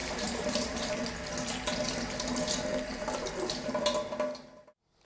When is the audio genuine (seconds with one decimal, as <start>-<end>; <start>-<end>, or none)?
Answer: 0.9-2.7; 3.3-5.1